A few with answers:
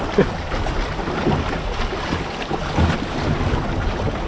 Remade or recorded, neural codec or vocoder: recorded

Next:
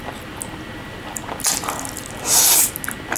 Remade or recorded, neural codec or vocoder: recorded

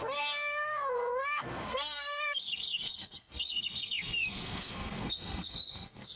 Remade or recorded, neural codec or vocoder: remade, codec, SNAC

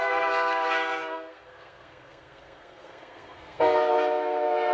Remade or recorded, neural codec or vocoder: remade, codec, SNAC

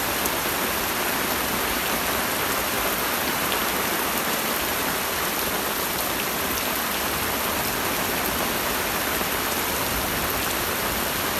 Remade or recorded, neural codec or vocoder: recorded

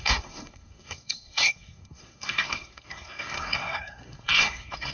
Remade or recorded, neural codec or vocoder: remade, codec, SNAC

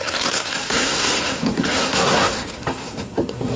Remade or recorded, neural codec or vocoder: remade, codec, SNAC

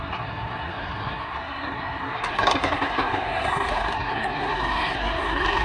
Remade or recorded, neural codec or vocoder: remade, codec, SNAC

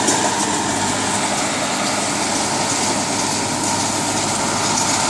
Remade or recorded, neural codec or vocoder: recorded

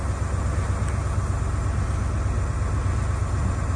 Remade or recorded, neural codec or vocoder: recorded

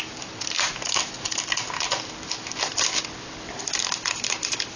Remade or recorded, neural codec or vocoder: recorded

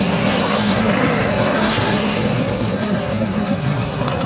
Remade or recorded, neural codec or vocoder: remade, codec, SNAC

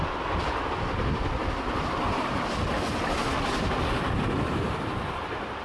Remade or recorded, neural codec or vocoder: recorded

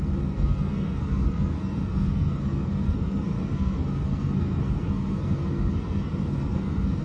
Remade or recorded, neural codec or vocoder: remade, codec, SNAC